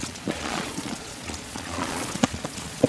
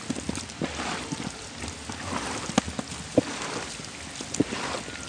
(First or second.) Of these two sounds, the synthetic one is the first